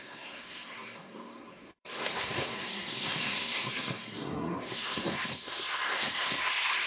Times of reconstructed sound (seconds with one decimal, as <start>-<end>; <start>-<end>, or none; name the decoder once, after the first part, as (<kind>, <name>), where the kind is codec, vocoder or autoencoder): 0.0-6.9 (codec, SNAC)